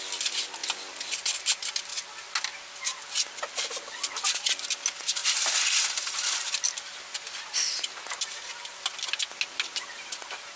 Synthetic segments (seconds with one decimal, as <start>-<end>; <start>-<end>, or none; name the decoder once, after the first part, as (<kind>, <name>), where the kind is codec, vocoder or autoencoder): none